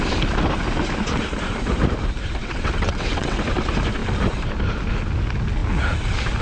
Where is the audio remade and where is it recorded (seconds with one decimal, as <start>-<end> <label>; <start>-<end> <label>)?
0.0-2.4 recorded; 2.4-3.4 remade; 3.4-6.4 recorded